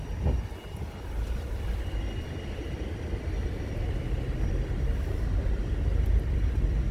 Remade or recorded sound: recorded